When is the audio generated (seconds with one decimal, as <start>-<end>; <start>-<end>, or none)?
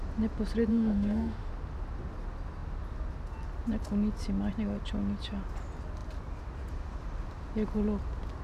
0.7-1.5